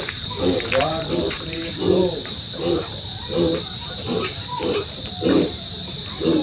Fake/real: fake